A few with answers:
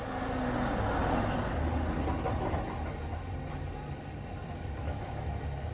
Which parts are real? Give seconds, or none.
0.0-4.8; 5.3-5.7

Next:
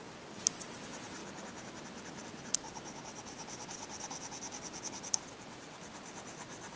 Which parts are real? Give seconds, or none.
0.0-6.8

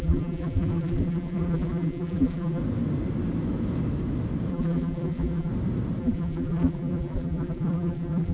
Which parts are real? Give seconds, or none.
2.6-4.5; 5.5-6.0

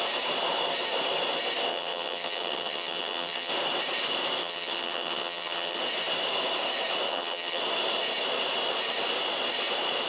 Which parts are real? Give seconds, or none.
0.0-1.7; 3.5-4.4; 5.8-7.1; 7.6-10.1

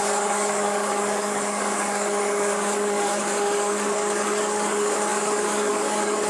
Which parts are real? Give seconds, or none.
none